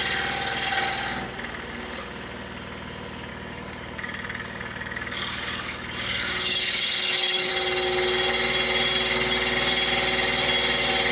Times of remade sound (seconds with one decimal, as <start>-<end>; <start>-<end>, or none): 3.3-7.5